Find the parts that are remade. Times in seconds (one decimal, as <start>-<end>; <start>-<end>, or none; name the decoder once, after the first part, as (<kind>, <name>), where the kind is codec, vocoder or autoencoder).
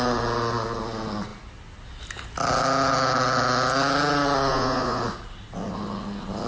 4.5-5.0 (vocoder, Vocos)